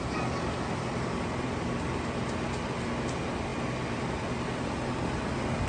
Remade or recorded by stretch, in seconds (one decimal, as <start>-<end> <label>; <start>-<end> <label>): 0.0-5.7 recorded